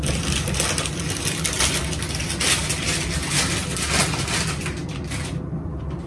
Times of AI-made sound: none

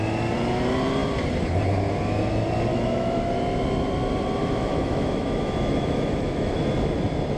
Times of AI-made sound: 2.7-3.3; 4.4-6.6

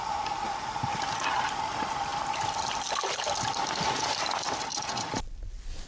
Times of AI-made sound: none